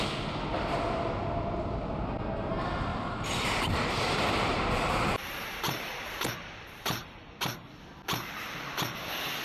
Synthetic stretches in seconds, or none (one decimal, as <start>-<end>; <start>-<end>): 2.9-7.2